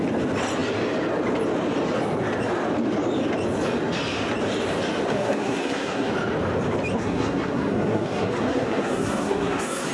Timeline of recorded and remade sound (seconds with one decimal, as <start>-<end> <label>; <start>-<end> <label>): 0.0-5.1 recorded; 5.1-6.1 remade; 6.1-7.0 recorded; 7.0-9.9 remade